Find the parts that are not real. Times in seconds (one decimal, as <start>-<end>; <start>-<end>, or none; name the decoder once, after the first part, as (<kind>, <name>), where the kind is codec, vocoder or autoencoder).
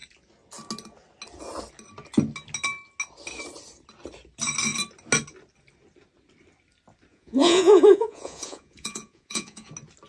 7.1-9.7 (vocoder, Vocos)